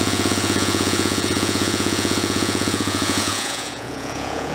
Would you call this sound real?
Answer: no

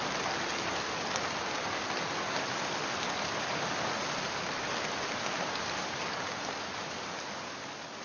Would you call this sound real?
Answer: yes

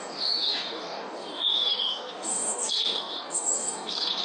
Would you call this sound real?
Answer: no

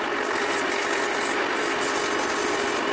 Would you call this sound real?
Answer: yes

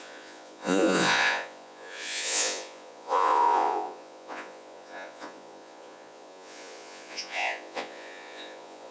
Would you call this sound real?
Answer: no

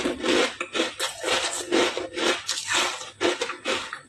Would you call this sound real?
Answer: yes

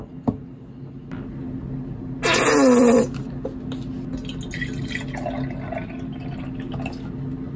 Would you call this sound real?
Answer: yes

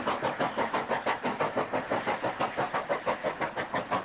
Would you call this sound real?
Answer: yes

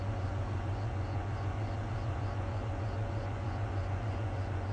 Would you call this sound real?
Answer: no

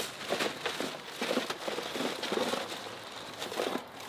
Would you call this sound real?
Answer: yes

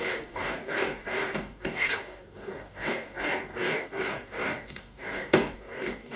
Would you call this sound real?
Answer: no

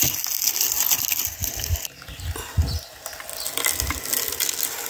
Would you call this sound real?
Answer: yes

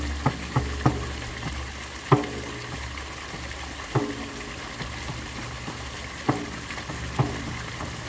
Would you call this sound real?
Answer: yes